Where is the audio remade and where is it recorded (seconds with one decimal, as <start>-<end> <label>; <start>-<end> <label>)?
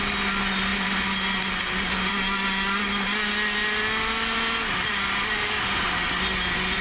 0.0-6.8 recorded